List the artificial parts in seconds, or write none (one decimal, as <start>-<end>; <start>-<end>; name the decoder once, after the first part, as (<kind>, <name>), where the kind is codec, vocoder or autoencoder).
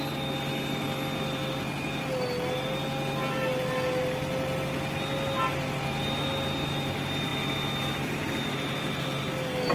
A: none